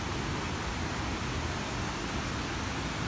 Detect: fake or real real